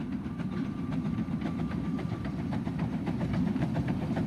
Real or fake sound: fake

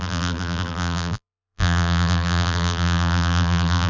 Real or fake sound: fake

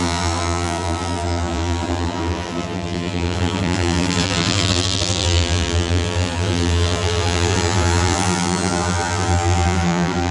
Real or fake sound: fake